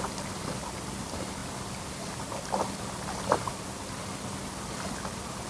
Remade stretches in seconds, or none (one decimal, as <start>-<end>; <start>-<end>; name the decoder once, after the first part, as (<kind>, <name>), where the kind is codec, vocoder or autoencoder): none